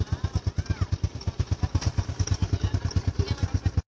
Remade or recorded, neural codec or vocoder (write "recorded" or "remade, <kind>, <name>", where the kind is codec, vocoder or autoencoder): recorded